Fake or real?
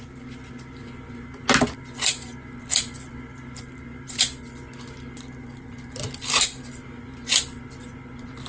real